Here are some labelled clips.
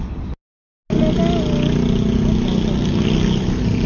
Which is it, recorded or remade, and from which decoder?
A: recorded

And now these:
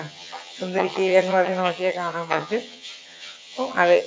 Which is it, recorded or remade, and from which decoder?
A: remade, vocoder, HiFi-GAN